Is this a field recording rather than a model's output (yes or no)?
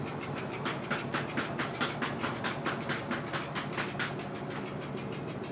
yes